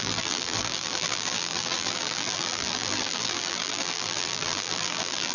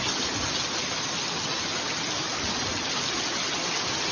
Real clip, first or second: second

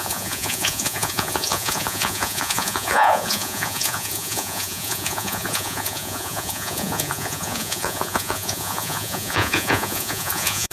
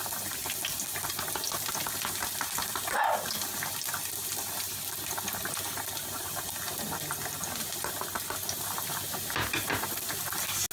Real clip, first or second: second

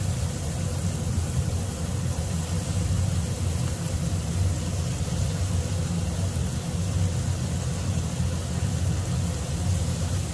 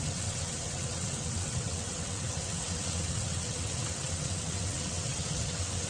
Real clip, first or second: first